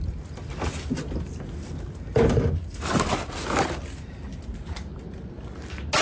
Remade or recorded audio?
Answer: recorded